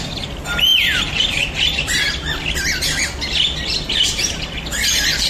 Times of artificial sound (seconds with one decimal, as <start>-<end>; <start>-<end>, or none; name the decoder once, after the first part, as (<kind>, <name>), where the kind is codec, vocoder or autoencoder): none